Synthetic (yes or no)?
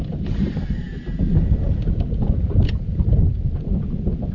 no